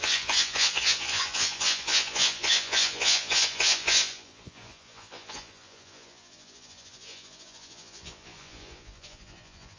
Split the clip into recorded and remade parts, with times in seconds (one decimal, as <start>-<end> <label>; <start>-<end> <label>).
0.0-9.8 remade